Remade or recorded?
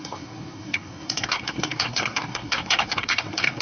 remade